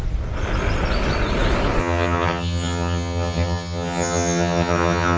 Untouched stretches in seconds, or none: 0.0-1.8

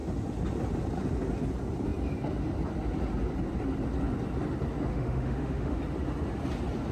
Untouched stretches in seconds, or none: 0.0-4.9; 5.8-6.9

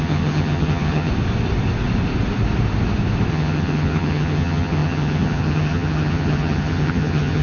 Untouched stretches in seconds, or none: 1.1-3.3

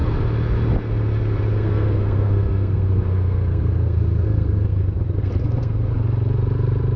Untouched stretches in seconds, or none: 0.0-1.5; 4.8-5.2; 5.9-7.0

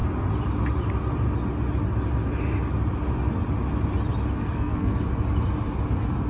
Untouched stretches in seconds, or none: 0.0-4.4; 5.0-6.3

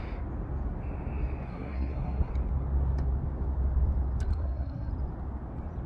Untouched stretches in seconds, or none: 0.0-1.5; 2.3-4.3; 4.9-5.9

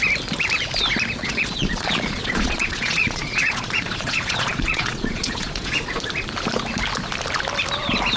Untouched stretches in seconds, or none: 0.0-1.2; 6.0-8.2

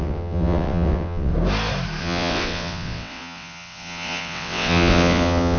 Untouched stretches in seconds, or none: 1.3-2.0